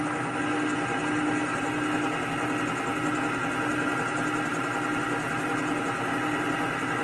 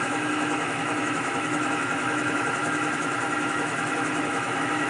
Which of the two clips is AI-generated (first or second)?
second